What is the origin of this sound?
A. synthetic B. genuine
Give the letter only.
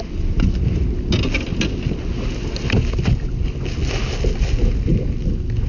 B